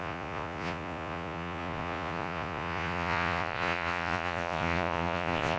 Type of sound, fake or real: fake